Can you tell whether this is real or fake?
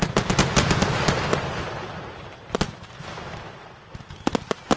real